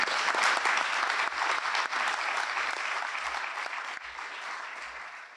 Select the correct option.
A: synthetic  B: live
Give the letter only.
B